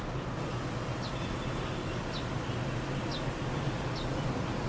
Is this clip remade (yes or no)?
no